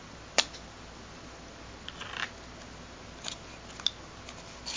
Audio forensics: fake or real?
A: real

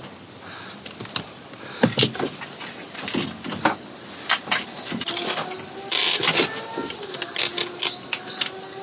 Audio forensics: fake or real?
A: real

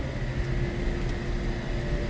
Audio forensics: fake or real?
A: real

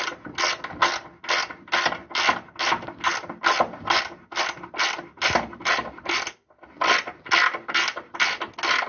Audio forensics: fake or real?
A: real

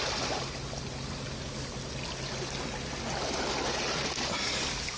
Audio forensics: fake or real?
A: real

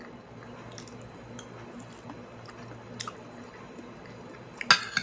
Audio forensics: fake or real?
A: real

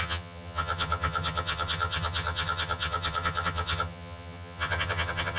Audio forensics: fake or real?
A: fake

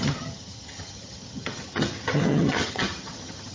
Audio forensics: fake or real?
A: fake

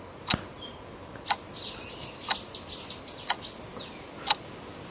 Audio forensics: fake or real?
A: real